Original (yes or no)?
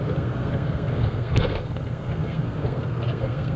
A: no